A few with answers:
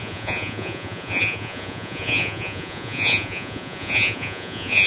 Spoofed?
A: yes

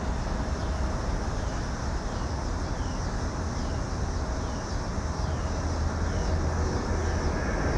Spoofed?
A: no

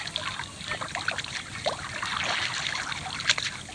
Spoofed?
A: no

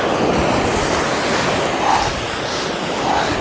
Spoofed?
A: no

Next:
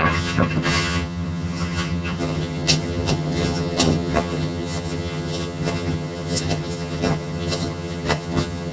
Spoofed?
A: yes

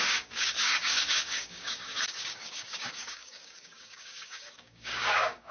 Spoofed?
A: yes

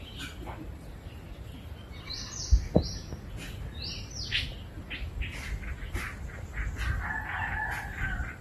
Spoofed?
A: no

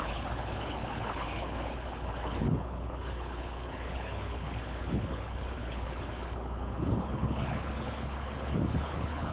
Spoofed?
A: yes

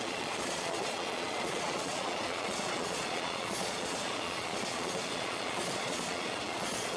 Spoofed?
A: yes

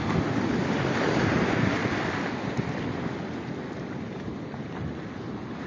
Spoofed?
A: no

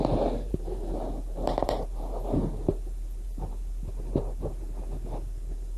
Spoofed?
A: yes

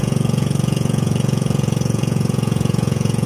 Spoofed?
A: yes